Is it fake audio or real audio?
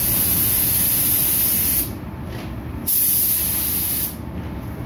real